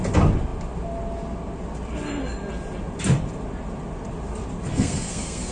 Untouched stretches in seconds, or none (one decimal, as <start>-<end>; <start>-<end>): 0.0-4.7